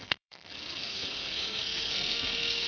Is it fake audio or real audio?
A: fake